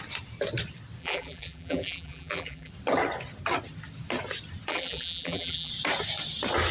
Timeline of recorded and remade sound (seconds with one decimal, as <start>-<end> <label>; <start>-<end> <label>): 0.0-1.0 recorded; 1.0-2.7 remade; 2.7-4.7 recorded; 4.7-5.7 remade; 5.7-6.7 recorded